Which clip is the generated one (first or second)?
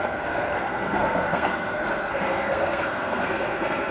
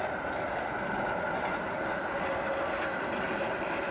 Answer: first